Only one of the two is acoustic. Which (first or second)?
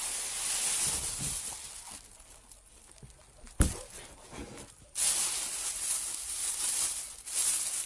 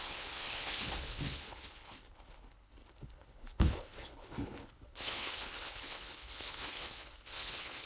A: first